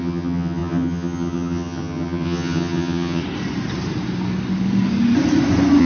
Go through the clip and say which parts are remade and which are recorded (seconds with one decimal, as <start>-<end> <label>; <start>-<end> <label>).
0.0-3.2 remade; 3.2-5.8 recorded